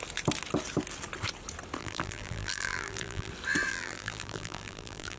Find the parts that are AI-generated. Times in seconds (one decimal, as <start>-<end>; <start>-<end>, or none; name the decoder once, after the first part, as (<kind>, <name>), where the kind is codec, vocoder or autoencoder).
1.8-3.3 (vocoder, BigVGAN v2); 3.7-5.2